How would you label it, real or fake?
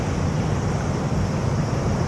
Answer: real